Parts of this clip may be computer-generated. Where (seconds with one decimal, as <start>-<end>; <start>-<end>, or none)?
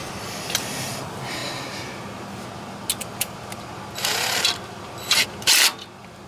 none